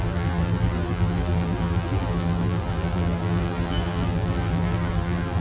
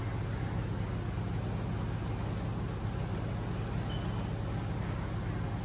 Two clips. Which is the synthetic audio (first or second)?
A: first